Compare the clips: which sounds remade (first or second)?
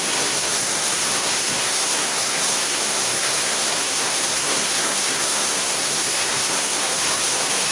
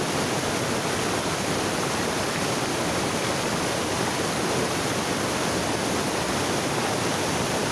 first